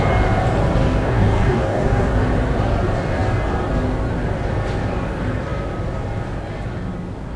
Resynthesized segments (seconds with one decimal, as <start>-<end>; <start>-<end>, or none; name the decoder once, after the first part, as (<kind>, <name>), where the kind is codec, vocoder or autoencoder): 0.9-2.1 (codec, DAC)